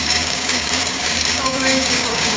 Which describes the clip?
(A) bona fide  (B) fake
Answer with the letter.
B